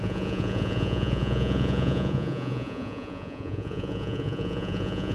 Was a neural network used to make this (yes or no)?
yes